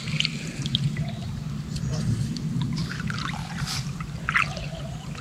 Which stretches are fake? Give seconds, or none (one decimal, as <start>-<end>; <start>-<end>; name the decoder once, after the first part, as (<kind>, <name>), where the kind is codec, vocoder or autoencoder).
none